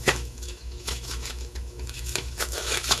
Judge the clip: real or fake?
fake